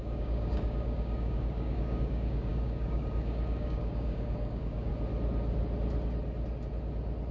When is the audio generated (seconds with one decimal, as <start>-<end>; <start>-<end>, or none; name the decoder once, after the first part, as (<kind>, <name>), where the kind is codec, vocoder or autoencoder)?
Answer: 0.0-4.9 (codec, DAC)